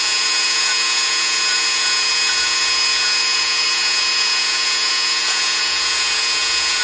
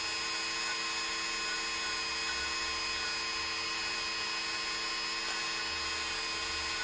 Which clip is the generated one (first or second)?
first